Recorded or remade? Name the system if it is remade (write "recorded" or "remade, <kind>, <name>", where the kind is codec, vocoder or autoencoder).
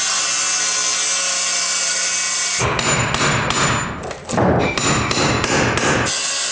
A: recorded